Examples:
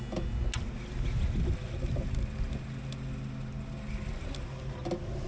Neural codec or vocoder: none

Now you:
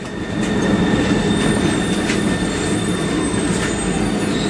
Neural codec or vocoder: none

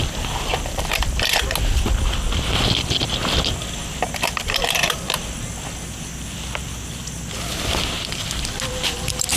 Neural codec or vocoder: none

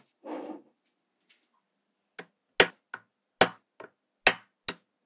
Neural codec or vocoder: none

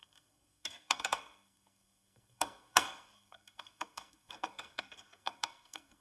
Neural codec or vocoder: codec, SNAC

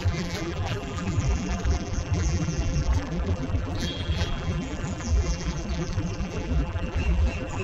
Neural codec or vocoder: vocoder, BigVGAN v2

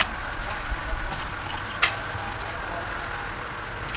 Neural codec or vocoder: none